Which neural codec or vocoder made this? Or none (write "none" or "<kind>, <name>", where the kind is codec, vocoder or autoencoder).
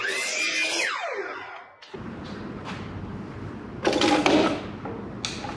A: none